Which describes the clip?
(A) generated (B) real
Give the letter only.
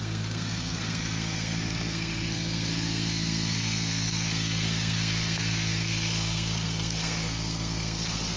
A